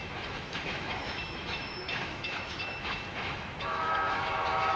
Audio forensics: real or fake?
fake